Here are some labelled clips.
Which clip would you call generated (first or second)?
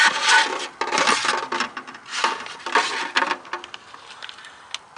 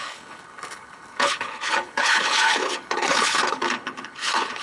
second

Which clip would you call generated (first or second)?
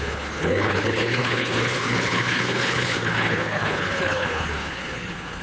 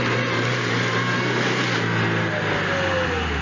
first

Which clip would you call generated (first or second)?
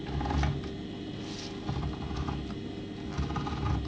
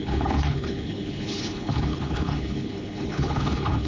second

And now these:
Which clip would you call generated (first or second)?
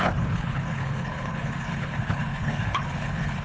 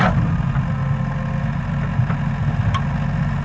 first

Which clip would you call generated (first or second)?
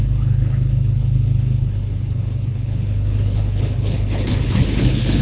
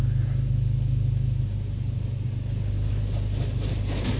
first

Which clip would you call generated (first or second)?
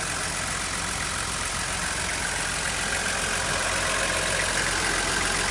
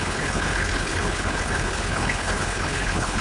second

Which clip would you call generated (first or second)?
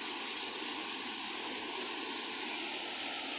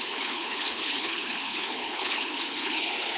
second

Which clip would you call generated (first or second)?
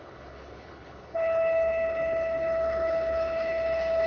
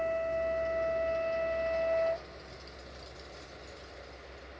first